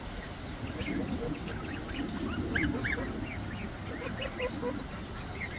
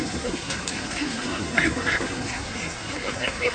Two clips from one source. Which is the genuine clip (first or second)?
first